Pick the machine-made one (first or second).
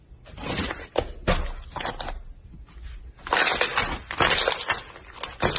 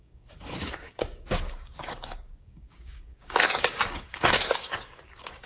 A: second